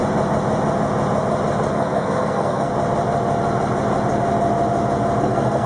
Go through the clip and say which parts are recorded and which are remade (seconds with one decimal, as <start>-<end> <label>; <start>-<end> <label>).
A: 0.0-1.7 recorded; 1.7-2.7 remade; 2.7-5.2 recorded; 5.2-5.7 remade